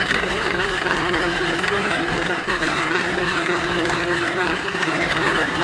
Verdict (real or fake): fake